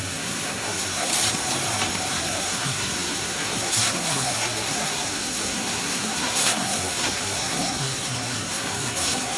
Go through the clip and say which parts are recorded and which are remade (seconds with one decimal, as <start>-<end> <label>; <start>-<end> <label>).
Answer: 0.0-1.1 remade; 1.1-2.1 recorded; 2.1-9.4 remade